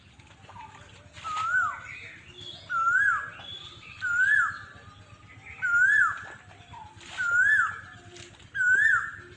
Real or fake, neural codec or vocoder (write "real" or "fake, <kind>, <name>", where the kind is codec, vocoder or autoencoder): real